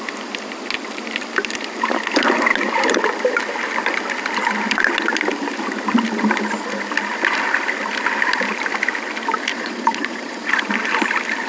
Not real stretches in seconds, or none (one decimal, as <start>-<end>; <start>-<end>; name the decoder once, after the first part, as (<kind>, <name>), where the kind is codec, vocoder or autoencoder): 9.5-10.5 (vocoder, Vocos)